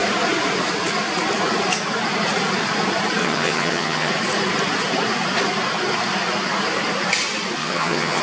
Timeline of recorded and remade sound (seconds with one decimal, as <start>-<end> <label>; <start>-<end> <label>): 0.0-3.2 recorded; 3.2-4.1 remade; 4.1-7.6 recorded; 7.6-8.2 remade